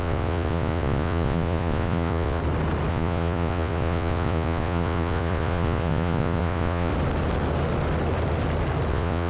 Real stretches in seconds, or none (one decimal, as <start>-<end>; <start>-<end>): 2.4-2.9; 6.9-8.9